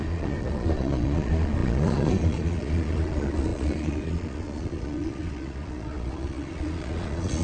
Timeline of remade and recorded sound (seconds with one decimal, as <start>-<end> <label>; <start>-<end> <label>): 0.0-7.4 remade